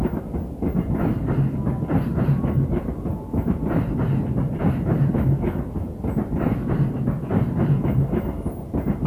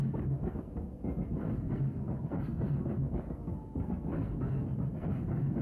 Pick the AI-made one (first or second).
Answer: second